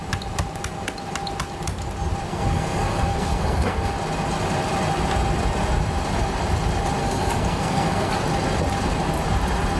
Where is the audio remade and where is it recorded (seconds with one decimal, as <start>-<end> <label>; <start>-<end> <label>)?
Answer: 0.0-2.3 recorded; 2.3-3.9 remade; 3.9-7.0 recorded; 7.0-8.1 remade; 8.1-9.8 recorded